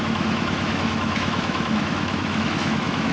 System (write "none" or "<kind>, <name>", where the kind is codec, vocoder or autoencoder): autoencoder, DAC-VAE